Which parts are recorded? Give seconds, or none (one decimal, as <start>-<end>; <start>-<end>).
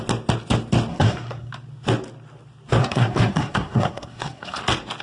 0.0-0.9; 1.5-2.8; 4.6-5.0